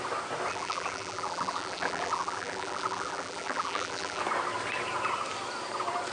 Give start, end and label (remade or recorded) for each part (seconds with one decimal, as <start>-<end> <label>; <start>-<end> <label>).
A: 0.0-0.5 recorded; 0.5-4.2 remade; 4.2-6.1 recorded